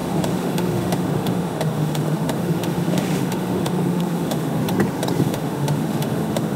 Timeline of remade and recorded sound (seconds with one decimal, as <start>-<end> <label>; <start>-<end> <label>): 0.0-4.6 remade; 4.6-5.2 recorded; 5.2-6.6 remade